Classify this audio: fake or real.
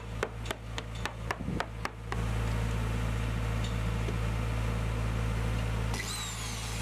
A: real